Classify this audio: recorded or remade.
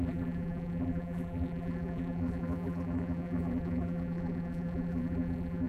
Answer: remade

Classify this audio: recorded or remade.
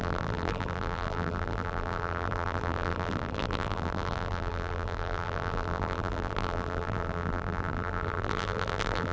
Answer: remade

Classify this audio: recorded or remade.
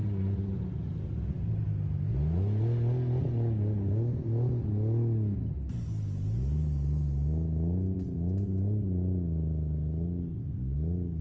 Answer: recorded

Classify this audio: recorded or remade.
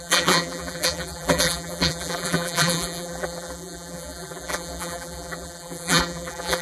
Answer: remade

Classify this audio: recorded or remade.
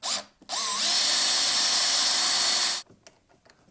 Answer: recorded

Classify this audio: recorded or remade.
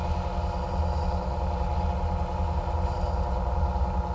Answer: recorded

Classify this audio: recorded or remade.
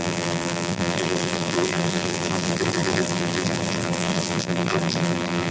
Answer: remade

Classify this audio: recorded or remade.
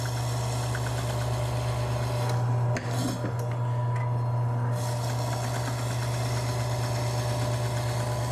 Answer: recorded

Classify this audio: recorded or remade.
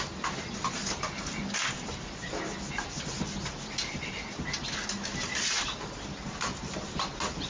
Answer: recorded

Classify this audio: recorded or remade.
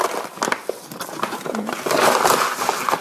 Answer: recorded